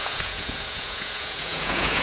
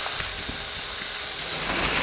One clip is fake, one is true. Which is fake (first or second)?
first